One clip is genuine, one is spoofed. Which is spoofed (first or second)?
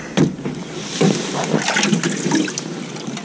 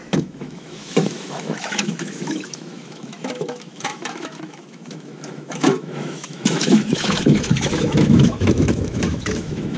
second